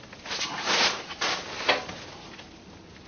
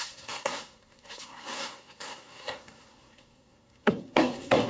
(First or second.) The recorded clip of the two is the first